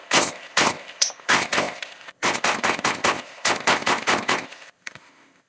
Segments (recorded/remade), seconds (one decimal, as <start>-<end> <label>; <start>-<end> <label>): 0.0-5.5 remade